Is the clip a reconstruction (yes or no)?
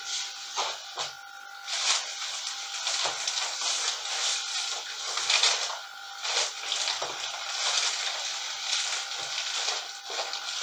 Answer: no